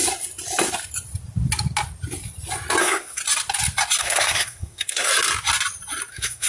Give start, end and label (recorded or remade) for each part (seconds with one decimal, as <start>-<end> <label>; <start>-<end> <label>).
0.0-2.8 recorded; 2.8-3.2 remade; 3.2-4.0 recorded; 4.0-5.1 remade; 5.1-6.1 recorded; 6.1-6.5 remade